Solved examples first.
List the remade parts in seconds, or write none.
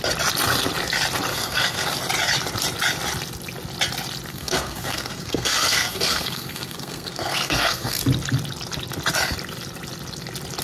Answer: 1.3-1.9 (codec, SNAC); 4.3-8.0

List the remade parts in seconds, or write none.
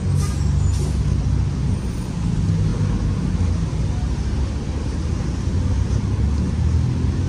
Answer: none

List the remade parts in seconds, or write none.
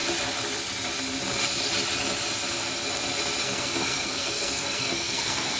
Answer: 3.4-5.6 (codec, SNAC)